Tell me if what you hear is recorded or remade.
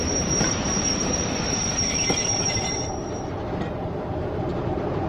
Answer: remade